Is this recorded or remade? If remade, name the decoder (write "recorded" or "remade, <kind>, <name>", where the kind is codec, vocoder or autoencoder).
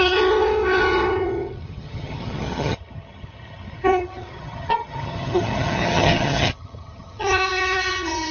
remade, vocoder, HiFi-GAN